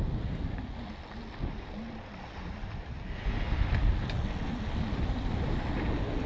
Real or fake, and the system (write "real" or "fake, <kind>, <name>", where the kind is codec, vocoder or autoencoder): real